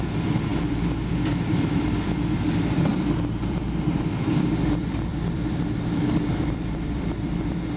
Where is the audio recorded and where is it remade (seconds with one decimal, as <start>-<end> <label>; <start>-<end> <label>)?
0.0-7.8 remade